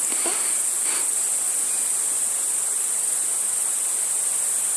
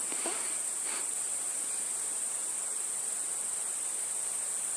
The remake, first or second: second